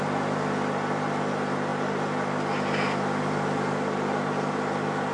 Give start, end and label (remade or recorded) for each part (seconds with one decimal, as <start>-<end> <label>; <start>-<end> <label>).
0.0-5.1 recorded